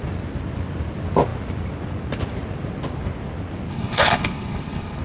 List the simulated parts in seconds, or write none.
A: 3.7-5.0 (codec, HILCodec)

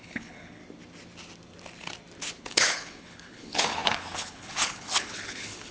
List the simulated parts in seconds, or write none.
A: 0.0-0.6 (codec, HILCodec); 2.4-5.7

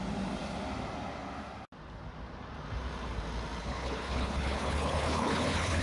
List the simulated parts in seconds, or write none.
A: 3.6-5.8 (codec, HILCodec)

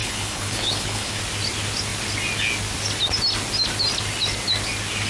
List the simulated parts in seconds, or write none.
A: 0.0-1.2 (codec, HILCodec)

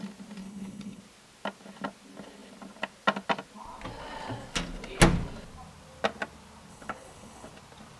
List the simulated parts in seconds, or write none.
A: 0.4-1.0 (codec, HILCodec); 6.7-7.5

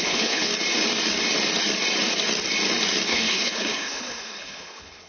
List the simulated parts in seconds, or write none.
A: 0.0-0.5 (codec, HILCodec); 3.1-5.1

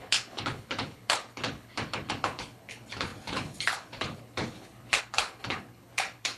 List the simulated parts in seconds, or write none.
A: 0.0-6.4 (codec, HILCodec)

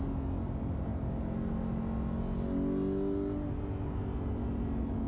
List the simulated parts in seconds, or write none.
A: none